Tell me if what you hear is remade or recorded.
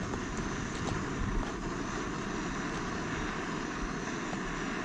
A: recorded